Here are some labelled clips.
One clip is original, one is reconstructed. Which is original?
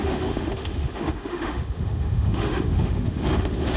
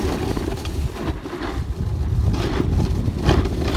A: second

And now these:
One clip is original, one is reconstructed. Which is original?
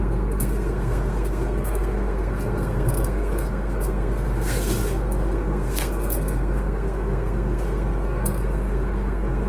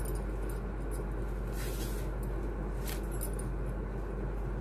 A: second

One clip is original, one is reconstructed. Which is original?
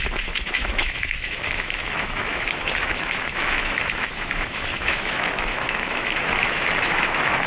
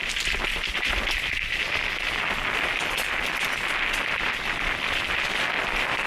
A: second